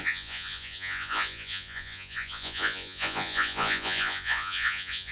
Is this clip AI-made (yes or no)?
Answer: yes